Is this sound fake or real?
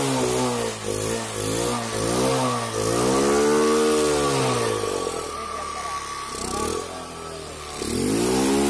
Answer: real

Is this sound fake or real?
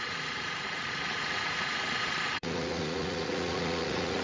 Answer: fake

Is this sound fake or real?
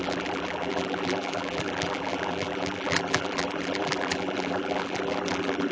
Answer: fake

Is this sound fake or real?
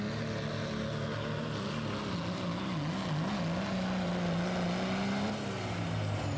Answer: real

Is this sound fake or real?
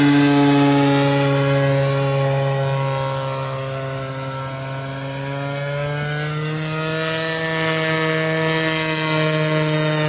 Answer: real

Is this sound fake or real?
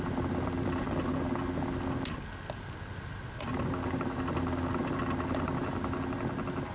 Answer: real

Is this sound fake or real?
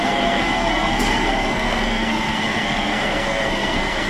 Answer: fake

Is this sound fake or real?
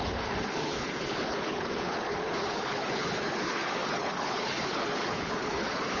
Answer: fake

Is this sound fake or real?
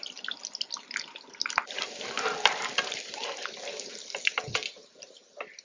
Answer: real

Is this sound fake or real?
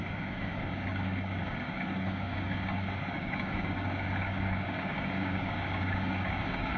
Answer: fake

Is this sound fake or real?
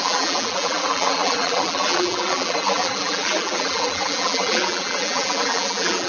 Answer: fake